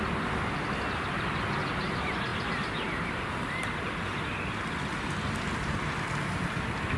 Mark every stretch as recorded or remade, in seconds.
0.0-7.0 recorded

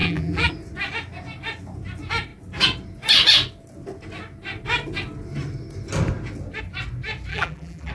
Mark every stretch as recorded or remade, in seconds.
0.0-0.5 remade; 0.5-7.3 recorded; 7.3-7.9 remade

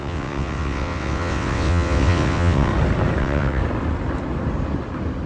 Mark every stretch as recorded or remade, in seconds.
0.0-2.7 remade; 2.7-3.2 recorded; 3.2-3.6 remade; 3.6-5.3 recorded

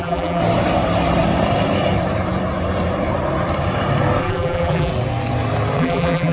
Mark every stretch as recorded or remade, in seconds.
0.0-0.4 remade; 0.4-4.2 recorded; 4.2-4.9 remade; 4.9-5.8 recorded; 5.8-6.3 remade